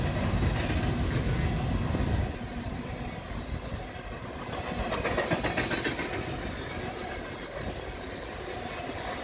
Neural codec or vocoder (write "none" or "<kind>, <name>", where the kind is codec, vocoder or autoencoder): none